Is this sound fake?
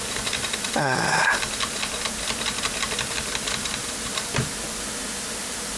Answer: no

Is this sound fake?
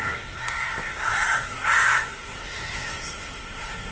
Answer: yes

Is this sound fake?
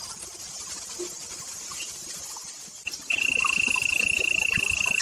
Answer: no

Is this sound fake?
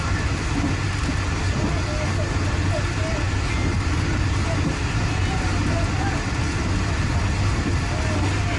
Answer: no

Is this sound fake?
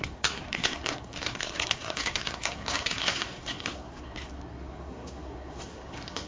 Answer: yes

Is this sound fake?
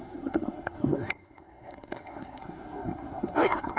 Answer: yes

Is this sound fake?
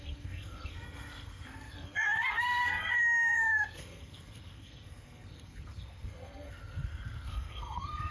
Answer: yes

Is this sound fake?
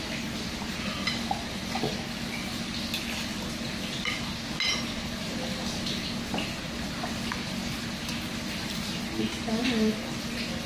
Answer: no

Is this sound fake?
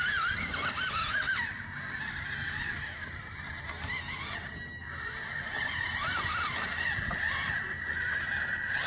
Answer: no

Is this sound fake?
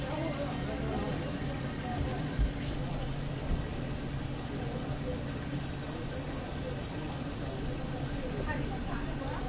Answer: no